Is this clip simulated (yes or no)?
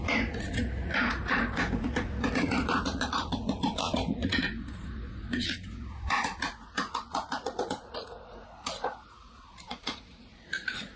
yes